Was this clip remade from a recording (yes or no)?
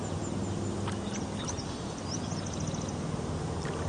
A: no